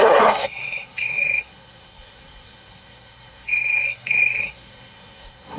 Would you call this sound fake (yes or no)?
yes